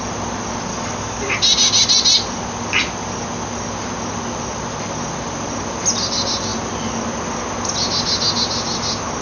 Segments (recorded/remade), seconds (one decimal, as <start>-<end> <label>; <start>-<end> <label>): 0.0-0.7 recorded; 0.7-1.3 remade; 1.3-9.2 recorded